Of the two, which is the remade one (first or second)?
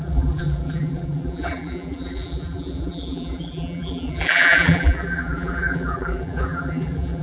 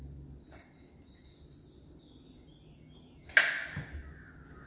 first